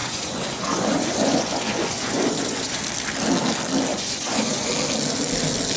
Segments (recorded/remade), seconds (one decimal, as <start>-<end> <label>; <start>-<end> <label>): 0.0-2.8 remade; 2.8-3.9 recorded; 3.9-4.7 remade; 4.7-5.8 recorded